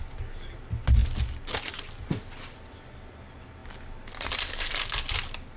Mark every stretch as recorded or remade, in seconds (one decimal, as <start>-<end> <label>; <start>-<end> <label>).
0.0-5.6 recorded